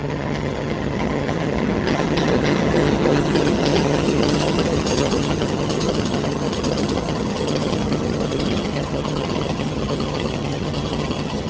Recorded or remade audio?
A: remade